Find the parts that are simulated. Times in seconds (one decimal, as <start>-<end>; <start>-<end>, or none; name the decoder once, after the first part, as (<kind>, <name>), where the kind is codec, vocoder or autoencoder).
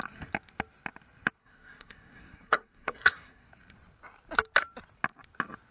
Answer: 1.4-3.5 (codec, SNAC)